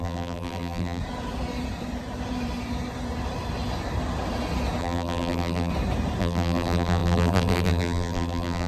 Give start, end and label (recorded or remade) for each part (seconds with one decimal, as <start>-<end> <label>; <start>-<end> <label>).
0.0-1.0 remade; 1.0-4.8 recorded; 4.8-5.7 remade; 5.7-6.2 recorded; 6.2-8.7 remade